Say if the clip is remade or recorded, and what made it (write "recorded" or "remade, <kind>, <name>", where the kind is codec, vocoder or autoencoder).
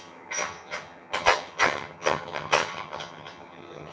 remade, vocoder, HiFi-GAN